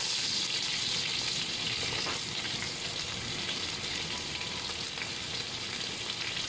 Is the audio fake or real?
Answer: real